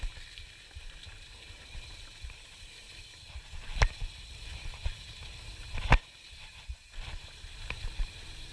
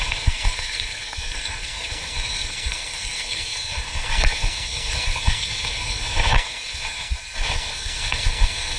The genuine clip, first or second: first